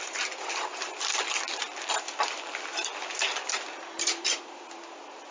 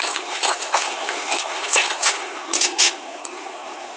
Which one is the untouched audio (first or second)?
first